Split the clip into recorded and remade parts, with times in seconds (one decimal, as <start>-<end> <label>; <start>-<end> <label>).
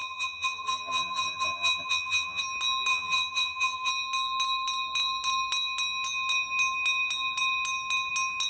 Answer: 0.0-2.4 remade; 2.4-2.9 recorded; 2.9-3.9 remade; 3.9-8.5 recorded